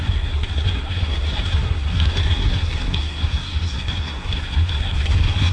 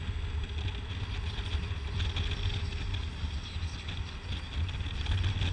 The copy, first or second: first